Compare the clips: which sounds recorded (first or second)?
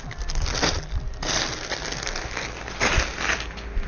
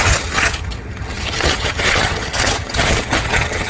first